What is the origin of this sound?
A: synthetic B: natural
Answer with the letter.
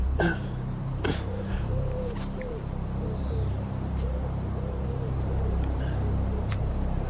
A